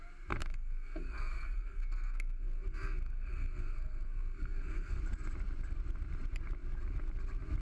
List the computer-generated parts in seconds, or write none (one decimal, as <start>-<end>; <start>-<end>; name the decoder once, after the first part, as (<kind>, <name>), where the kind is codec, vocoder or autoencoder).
0.4-5.0 (codec, SNAC)